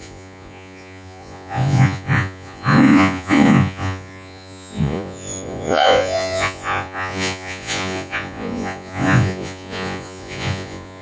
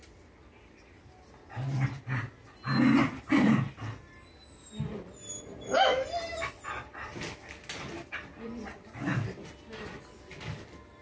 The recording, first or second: second